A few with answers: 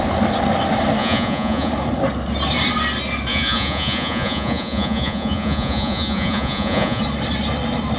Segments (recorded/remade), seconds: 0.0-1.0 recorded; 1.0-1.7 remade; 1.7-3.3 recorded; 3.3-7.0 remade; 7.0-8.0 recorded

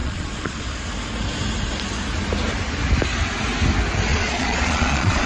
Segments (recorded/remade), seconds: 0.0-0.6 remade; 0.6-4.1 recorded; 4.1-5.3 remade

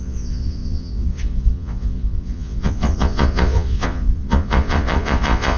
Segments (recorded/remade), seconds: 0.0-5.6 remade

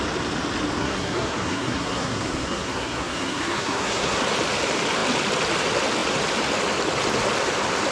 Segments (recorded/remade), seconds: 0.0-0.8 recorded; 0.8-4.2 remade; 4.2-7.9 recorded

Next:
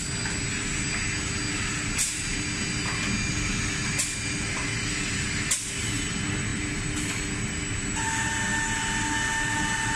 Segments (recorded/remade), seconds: 0.0-10.0 recorded

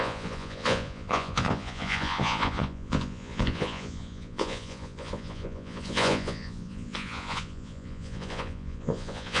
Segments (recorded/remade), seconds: 0.0-9.4 remade

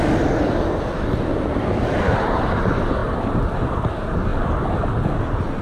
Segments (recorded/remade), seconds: 0.0-5.6 recorded

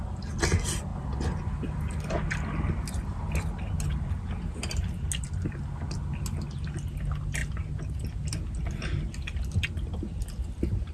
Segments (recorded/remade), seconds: 0.0-10.9 recorded